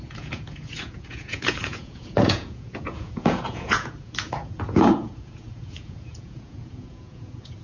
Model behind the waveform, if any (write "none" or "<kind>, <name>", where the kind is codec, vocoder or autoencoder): vocoder, Vocos